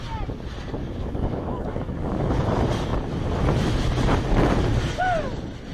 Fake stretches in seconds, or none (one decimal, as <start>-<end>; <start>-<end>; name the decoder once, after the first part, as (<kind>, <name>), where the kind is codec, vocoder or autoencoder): 0.8-2.3 (codec, DAC)